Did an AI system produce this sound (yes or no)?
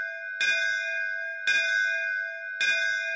no